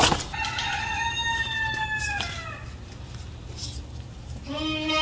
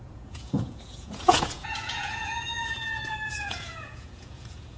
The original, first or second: first